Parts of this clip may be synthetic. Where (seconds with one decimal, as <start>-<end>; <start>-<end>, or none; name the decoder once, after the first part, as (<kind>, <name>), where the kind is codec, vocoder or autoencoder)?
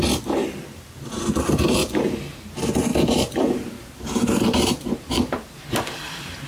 0.4-1.2 (vocoder, BigVGAN v2); 2.9-5.7